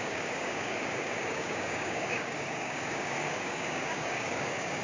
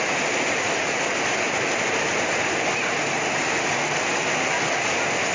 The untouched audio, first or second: second